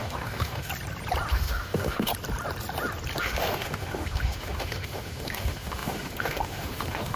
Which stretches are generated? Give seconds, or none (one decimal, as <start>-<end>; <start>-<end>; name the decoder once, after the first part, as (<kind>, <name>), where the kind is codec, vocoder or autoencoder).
0.0-0.7 (autoencoder, DAC-VAE); 1.3-2.1; 3.2-7.2